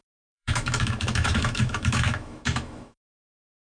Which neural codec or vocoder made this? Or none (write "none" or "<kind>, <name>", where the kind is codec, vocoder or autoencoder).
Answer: autoencoder, DAC-VAE